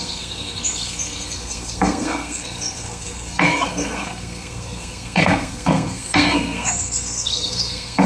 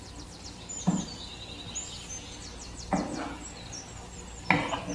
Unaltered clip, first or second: second